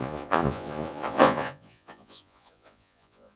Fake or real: fake